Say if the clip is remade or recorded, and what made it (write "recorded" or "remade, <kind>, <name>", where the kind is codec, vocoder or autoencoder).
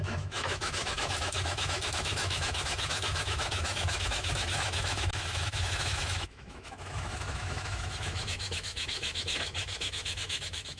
remade, autoencoder, DAC-VAE